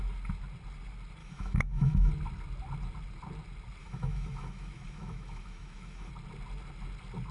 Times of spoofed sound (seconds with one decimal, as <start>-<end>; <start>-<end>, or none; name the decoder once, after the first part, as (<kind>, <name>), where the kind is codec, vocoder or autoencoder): 1.2-2.1 (autoencoder, DAC-VAE); 3.8-6.1